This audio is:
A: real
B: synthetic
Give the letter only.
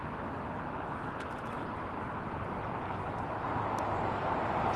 A